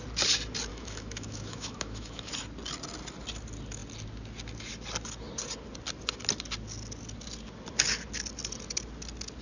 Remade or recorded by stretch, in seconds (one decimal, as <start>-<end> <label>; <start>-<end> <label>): 0.0-0.7 recorded; 0.7-2.3 remade; 2.3-9.4 recorded